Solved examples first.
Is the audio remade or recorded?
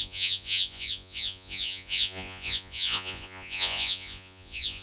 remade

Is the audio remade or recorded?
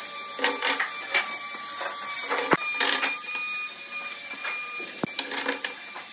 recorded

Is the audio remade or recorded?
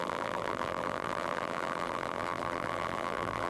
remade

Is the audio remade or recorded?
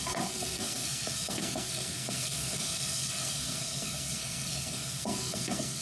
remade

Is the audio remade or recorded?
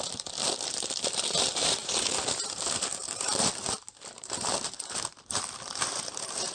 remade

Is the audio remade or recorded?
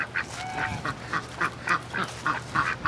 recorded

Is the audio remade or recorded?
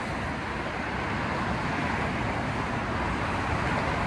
recorded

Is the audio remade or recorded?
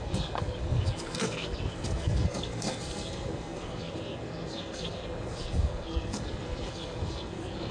remade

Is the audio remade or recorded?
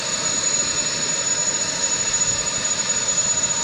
remade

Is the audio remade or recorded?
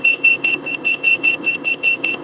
remade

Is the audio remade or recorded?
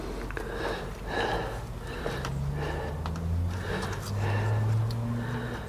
recorded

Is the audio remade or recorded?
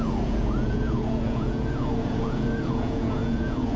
remade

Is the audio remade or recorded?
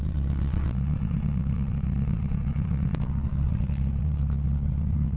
remade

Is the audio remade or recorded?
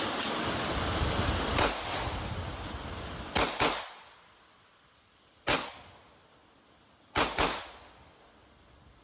recorded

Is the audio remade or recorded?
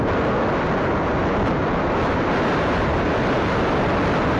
recorded